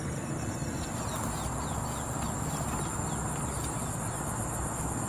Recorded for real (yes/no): yes